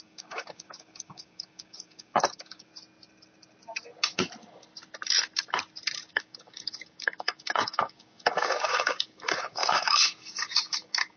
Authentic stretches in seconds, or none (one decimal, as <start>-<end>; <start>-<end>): 2.7-6.1